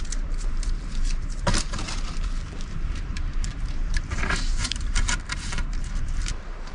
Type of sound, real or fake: fake